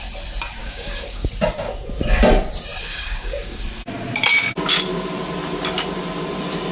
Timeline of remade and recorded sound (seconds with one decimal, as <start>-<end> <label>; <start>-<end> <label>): 0.0-0.6 recorded; 0.6-1.3 remade; 1.3-2.9 recorded; 2.9-3.6 remade; 3.6-6.7 recorded